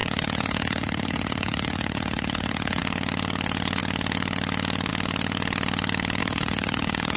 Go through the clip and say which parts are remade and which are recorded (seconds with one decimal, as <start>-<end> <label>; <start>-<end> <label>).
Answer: 0.0-2.8 remade; 2.8-6.2 recorded; 6.2-7.2 remade